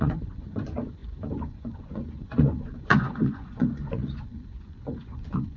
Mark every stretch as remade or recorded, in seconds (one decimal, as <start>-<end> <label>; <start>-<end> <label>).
0.0-5.6 remade